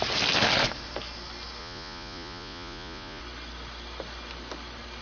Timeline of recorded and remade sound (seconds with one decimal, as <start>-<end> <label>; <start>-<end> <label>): 0.0-1.6 recorded; 1.6-3.2 remade; 3.2-5.0 recorded

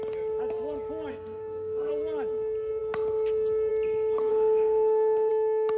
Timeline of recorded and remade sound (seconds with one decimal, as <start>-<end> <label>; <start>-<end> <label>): 0.0-1.1 recorded; 1.1-1.9 remade; 1.9-4.3 recorded; 4.3-5.3 remade; 5.3-5.8 recorded

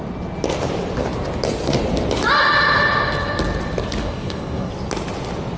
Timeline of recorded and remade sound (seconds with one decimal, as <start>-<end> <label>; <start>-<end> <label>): 0.0-4.0 recorded; 4.0-4.7 remade; 4.7-5.6 recorded

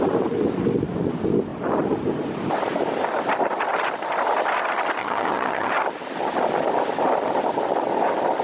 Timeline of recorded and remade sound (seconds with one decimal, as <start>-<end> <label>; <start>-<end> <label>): 0.0-5.0 recorded; 5.0-5.7 remade; 5.7-8.4 recorded

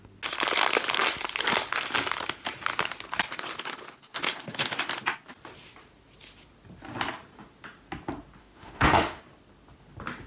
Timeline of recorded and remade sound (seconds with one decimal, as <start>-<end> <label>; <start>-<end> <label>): 0.0-8.4 recorded; 8.4-9.2 remade; 9.2-10.3 recorded

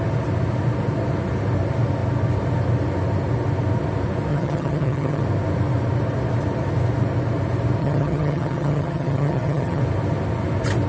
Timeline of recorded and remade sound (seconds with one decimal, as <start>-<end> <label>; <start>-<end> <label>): 0.0-4.3 recorded; 4.3-5.2 remade; 5.2-7.8 recorded; 7.8-9.8 remade; 9.8-10.9 recorded